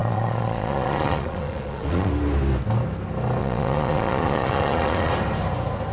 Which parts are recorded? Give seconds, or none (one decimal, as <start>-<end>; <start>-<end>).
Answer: 2.1-3.4; 5.1-5.9